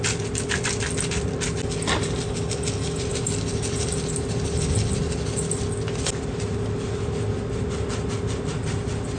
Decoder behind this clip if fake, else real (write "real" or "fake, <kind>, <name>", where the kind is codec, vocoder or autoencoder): real